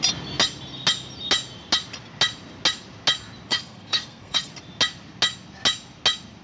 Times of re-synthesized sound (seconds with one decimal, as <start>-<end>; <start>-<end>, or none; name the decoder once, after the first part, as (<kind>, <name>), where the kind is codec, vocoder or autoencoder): 3.5-4.5 (codec, SNAC)